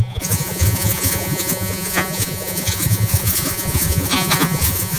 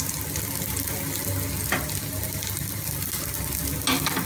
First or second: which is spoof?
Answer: first